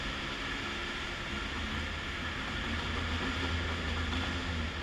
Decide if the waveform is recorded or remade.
recorded